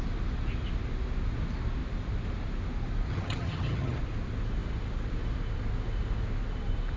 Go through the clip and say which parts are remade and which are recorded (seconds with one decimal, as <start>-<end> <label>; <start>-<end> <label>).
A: 0.0-3.1 recorded; 3.1-4.0 remade; 4.0-7.0 recorded